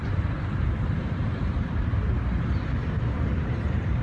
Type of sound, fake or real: fake